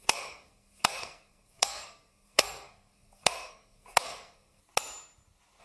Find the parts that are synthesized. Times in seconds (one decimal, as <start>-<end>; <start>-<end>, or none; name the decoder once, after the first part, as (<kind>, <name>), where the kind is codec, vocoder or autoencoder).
0.0-4.6 (codec, SNAC)